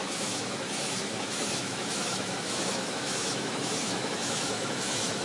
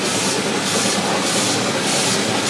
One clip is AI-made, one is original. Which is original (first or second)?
second